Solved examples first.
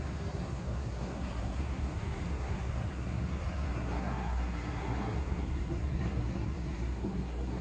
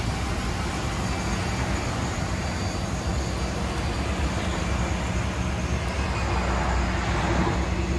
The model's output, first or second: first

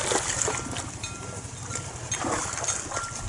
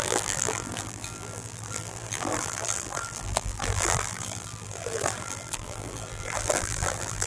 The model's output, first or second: second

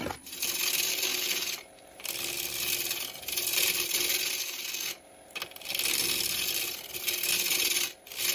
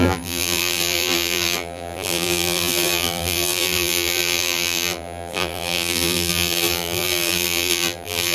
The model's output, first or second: second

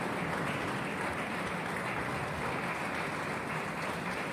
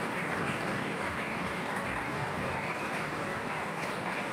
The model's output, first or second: second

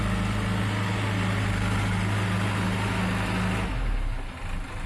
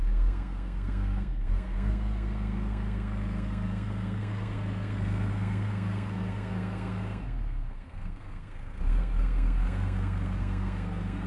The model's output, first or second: second